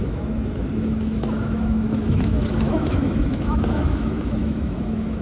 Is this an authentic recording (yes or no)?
no